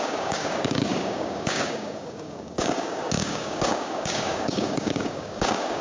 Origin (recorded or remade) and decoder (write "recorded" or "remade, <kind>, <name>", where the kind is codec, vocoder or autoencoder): remade, codec, DAC